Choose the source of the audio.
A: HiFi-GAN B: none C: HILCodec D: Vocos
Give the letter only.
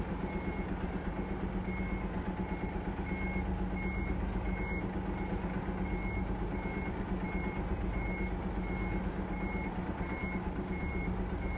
B